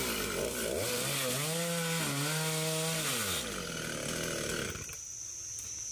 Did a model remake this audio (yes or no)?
no